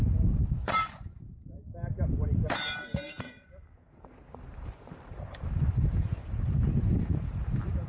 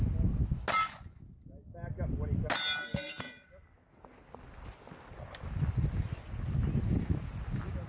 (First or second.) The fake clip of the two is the first